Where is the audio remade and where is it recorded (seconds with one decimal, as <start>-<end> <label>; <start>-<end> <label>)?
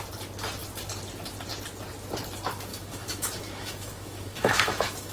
0.0-2.7 recorded; 2.7-5.1 remade